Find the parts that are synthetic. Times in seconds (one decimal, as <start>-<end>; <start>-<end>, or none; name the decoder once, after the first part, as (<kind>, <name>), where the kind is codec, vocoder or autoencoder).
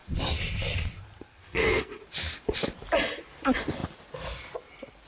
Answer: 1.3-2.0 (codec, SNAC)